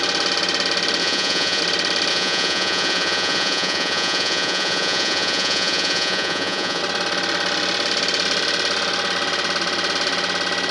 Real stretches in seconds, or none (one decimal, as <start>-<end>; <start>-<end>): 0.0-1.0; 1.6-2.1; 6.8-10.7